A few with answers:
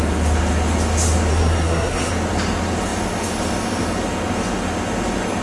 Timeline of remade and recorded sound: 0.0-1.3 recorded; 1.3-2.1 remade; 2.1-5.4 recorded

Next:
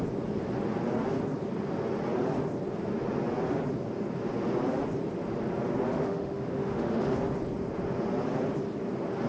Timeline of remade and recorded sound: 0.0-5.9 recorded; 5.9-7.1 remade; 7.1-9.3 recorded

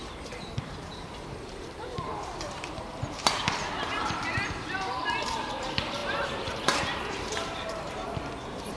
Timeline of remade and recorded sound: 0.0-8.8 remade